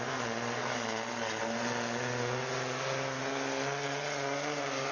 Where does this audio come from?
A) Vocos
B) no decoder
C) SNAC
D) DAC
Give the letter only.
B